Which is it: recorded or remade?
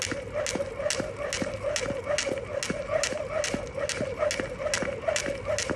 recorded